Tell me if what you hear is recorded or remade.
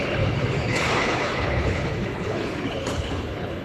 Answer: remade